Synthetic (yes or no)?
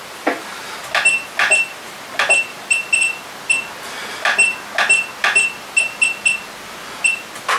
no